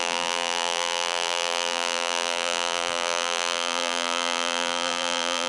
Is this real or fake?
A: fake